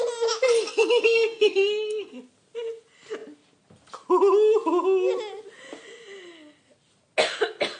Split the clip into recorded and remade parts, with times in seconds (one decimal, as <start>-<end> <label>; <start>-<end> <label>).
0.0-0.6 recorded; 0.6-2.2 remade; 2.2-7.8 recorded

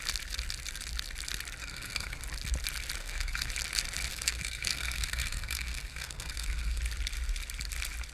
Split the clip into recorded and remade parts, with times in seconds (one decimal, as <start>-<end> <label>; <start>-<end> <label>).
0.0-1.6 recorded; 1.6-2.2 remade; 2.2-3.0 recorded; 3.0-3.5 remade; 3.5-4.1 recorded; 4.1-6.8 remade; 6.8-8.1 recorded

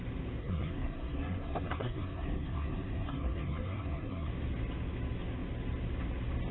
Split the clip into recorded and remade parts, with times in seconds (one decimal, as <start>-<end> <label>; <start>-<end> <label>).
0.0-0.4 recorded; 0.4-4.3 remade; 4.3-6.5 recorded

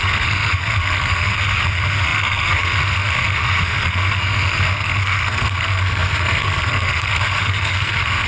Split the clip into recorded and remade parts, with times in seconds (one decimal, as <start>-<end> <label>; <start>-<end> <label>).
0.0-8.3 remade

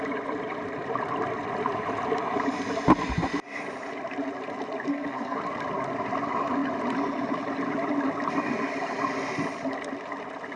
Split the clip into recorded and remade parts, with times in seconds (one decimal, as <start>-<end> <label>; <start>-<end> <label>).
0.0-4.9 recorded; 4.9-5.4 remade; 5.4-10.6 recorded